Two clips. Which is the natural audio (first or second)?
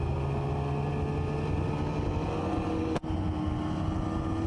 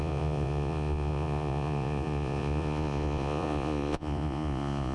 first